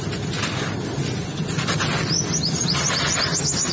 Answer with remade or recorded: recorded